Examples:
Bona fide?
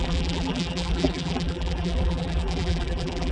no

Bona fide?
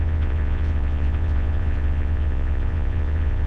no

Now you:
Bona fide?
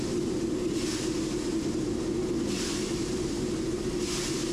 yes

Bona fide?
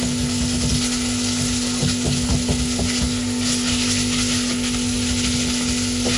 yes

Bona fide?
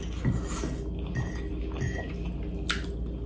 yes